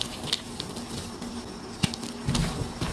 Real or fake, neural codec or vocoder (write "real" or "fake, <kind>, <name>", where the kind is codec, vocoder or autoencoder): real